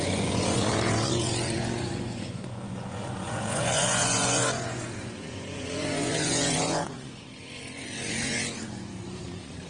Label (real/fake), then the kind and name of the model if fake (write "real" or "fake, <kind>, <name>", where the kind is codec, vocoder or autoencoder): fake, vocoder, Vocos